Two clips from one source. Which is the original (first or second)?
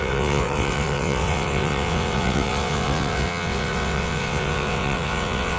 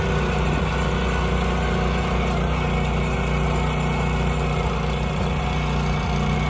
second